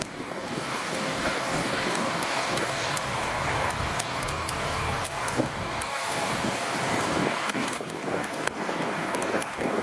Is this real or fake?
fake